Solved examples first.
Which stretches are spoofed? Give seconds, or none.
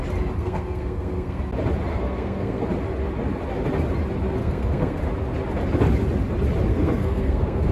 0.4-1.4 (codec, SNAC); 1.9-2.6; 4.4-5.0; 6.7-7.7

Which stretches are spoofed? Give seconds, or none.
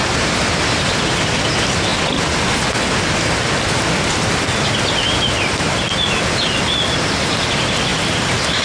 none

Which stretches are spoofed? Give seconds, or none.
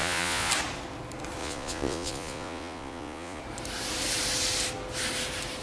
0.0-0.5 (vocoder, Vocos); 1.4-3.4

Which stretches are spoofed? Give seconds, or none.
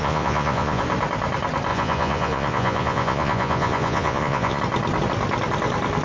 0.0-0.8 (vocoder, Vocos); 1.7-4.6